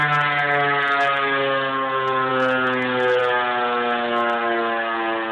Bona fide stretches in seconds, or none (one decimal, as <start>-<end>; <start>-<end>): 0.0-5.3